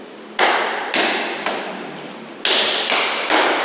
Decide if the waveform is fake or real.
real